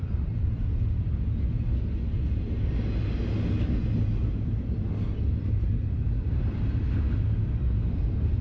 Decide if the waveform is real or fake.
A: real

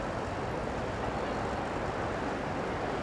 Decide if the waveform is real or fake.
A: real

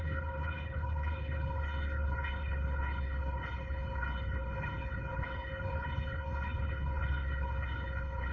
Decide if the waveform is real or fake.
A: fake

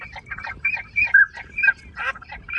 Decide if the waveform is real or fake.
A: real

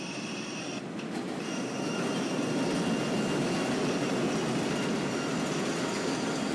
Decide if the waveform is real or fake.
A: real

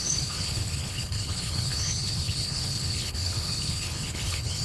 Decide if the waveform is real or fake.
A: fake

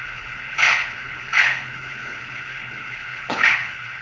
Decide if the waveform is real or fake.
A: fake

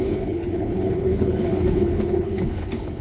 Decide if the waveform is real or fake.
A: fake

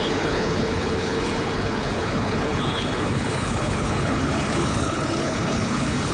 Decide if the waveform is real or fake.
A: fake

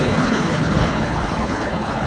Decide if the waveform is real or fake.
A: fake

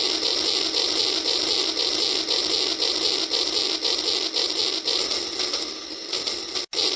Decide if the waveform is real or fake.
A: real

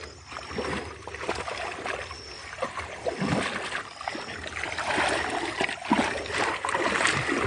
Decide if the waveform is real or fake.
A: real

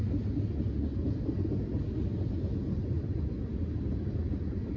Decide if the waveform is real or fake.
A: real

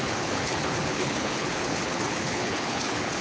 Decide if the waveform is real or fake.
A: fake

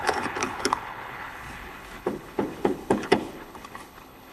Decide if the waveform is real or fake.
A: fake